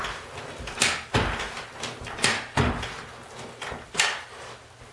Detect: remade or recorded recorded